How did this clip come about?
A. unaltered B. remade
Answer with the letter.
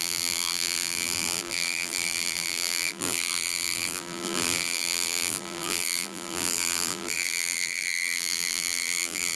B